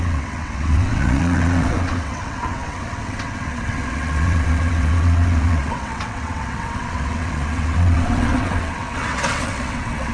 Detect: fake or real fake